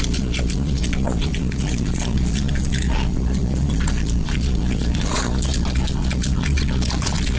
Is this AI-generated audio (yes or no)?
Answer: yes